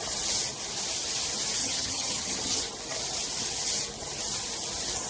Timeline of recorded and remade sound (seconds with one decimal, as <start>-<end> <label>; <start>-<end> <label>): 0.0-1.6 recorded; 1.6-2.6 remade; 2.6-5.1 recorded